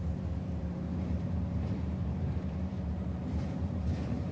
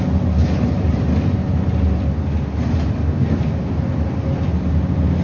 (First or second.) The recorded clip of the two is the second